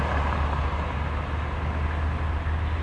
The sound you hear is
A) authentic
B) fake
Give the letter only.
A